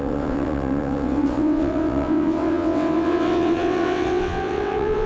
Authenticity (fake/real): fake